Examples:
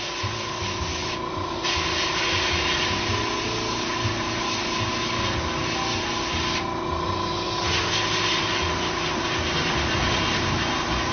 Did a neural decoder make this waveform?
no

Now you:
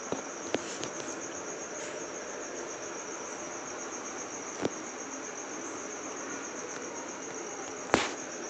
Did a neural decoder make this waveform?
no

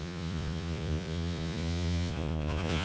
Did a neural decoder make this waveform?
yes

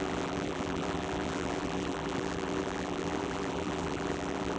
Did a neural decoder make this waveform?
yes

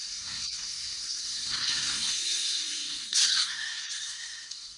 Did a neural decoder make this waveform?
yes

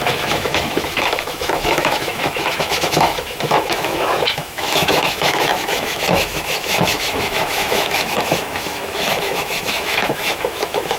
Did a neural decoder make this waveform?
yes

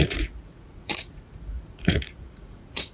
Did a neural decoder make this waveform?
yes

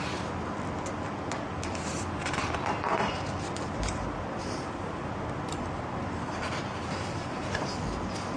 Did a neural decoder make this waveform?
yes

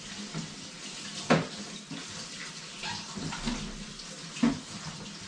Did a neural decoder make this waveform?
no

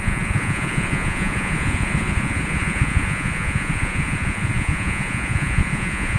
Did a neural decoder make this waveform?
yes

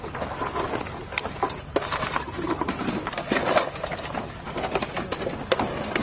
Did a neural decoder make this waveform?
no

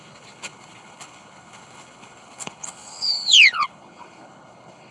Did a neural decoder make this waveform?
yes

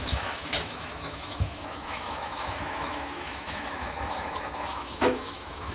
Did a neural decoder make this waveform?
yes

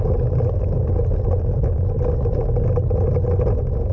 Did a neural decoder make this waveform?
no